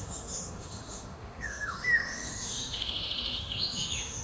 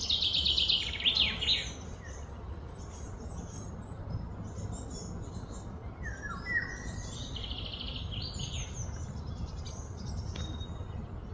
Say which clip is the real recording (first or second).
second